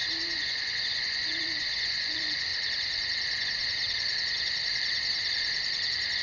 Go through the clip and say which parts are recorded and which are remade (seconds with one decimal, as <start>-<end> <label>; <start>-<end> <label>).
0.0-2.5 remade; 2.5-6.2 recorded